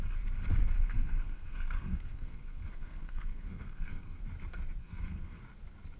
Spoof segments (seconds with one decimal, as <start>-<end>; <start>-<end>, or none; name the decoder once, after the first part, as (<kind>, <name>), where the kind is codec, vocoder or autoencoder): 0.6-4.2 (codec, SNAC); 4.8-5.4

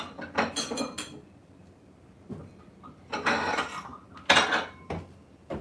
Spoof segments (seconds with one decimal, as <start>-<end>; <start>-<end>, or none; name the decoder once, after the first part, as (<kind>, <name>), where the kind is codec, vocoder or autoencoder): none

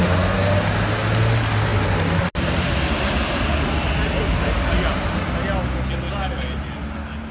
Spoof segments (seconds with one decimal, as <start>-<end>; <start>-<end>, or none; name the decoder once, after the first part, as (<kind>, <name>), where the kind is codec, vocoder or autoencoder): none